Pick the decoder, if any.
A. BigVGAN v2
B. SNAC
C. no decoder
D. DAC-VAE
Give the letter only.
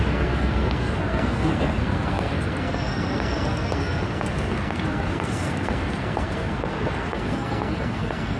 B